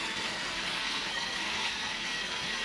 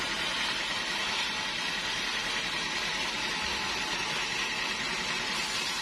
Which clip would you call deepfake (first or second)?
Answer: first